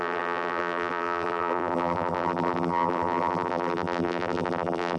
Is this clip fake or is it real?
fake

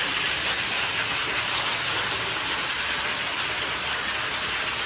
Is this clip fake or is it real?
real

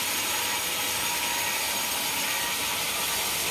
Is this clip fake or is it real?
real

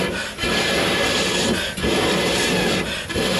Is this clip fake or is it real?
real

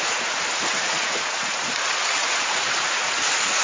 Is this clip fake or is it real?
fake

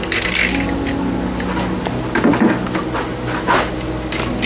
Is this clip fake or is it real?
real